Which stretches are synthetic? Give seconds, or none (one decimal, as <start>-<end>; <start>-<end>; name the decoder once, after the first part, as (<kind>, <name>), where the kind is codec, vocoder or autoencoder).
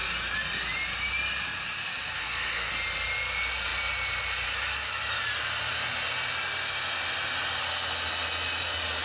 2.2-2.7 (codec, SNAC)